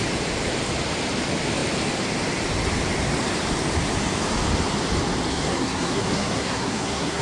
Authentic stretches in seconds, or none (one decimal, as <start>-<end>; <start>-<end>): 0.0-5.3

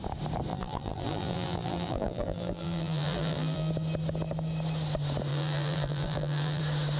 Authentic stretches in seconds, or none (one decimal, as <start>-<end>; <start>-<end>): 0.0-0.5; 3.7-5.3; 6.6-7.0

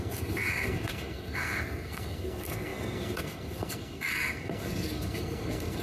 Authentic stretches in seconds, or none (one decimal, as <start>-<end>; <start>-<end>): none

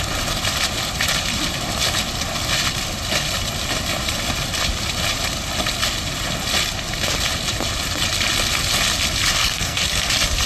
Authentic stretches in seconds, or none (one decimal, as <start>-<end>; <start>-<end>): 0.0-9.4; 10.1-10.5

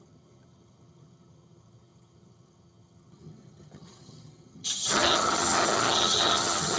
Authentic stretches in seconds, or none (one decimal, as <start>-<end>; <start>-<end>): none